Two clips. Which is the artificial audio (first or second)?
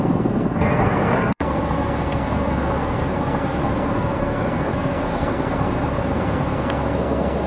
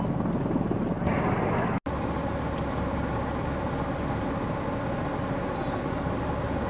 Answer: first